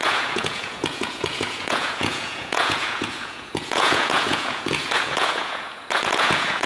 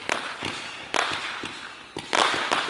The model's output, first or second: first